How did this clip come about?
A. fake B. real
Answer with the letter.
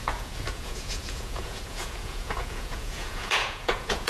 A